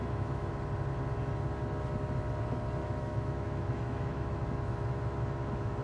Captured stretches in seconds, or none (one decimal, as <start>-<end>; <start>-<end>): 0.5-2.8